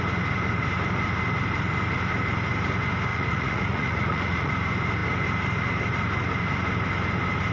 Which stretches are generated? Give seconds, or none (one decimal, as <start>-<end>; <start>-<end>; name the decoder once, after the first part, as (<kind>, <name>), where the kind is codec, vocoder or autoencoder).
3.1-4.5 (vocoder, Vocos)